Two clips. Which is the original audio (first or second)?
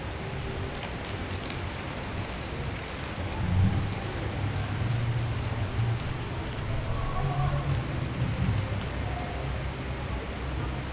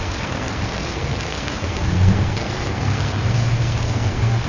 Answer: first